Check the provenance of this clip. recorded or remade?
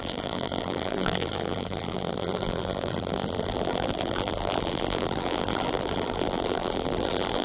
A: remade